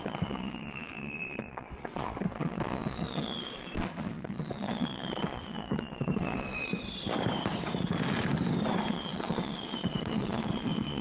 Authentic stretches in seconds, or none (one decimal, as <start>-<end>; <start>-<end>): 6.7-8.9